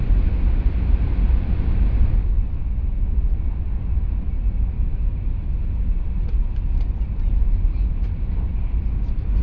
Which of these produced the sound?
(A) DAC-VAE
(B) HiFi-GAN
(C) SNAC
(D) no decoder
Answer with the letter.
D